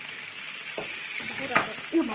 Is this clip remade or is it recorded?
recorded